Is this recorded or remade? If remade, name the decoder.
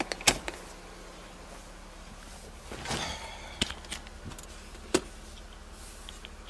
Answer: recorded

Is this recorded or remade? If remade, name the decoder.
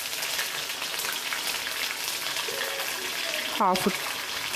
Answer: recorded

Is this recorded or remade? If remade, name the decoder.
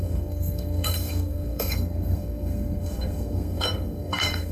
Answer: remade, codec, SNAC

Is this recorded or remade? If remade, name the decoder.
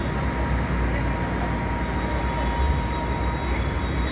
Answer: recorded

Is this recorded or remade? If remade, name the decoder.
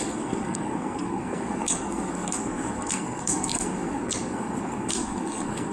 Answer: remade, codec, SNAC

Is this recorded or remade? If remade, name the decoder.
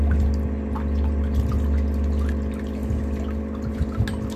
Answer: recorded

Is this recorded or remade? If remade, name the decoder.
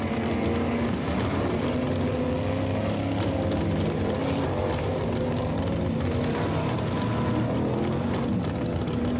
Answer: recorded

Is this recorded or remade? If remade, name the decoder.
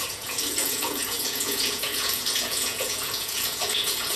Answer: remade, vocoder, Vocos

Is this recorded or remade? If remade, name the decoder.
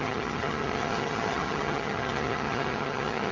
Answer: remade, vocoder, HiFi-GAN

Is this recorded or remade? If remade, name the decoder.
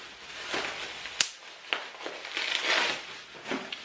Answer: recorded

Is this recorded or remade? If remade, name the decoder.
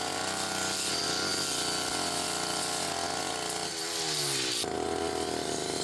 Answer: recorded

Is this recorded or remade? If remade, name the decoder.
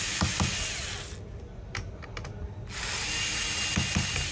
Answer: recorded